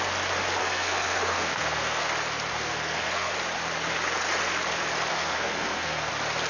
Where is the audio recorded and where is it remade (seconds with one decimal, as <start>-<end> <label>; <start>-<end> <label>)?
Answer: 0.0-0.6 recorded; 0.6-2.1 remade; 2.1-2.5 recorded; 2.5-3.3 remade; 3.3-5.1 recorded; 5.1-6.1 remade; 6.1-6.5 recorded